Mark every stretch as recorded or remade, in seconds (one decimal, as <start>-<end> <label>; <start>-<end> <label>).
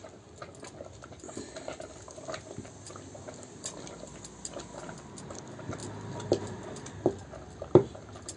0.0-8.4 recorded